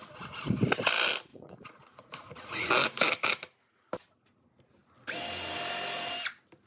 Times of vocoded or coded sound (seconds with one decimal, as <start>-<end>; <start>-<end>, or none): 1.3-2.7